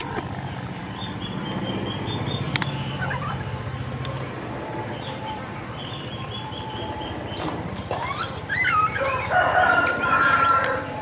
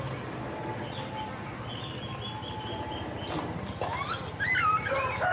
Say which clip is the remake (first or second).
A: first